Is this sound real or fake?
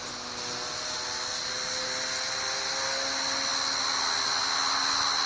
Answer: real